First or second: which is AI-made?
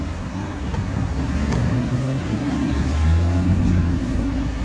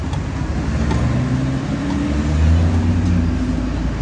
first